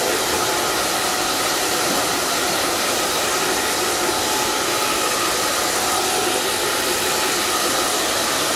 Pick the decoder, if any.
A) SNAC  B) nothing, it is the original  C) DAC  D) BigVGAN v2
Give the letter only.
B